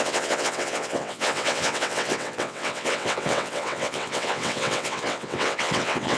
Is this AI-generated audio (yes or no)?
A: yes